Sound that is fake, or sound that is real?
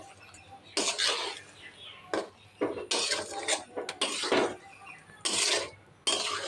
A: real